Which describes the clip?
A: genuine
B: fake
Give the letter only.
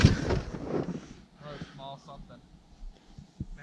A